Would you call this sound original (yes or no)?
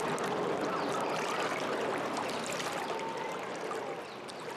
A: yes